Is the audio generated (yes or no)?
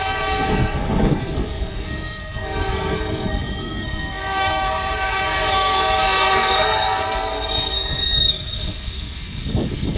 yes